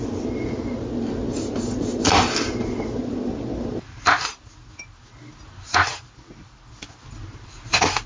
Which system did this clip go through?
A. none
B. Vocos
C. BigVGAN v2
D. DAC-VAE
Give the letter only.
A